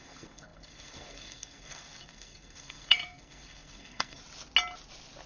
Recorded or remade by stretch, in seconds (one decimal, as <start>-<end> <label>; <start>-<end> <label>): 0.0-4.2 remade; 4.2-5.3 recorded